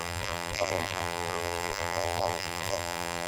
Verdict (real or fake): fake